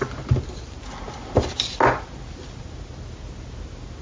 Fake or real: real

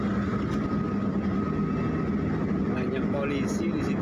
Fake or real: real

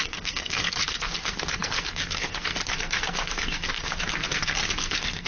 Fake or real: fake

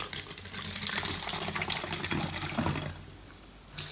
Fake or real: real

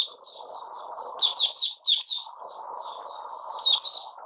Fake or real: real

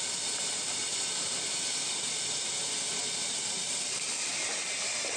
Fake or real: real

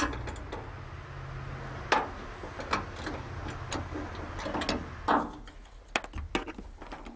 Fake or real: real